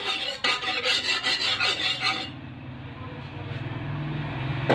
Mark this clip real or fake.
real